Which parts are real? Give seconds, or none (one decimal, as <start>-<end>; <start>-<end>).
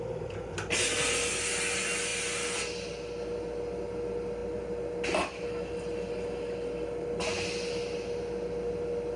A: 0.0-9.2